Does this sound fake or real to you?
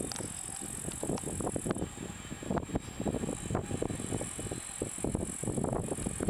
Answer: real